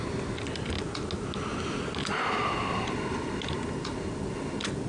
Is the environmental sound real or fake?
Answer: real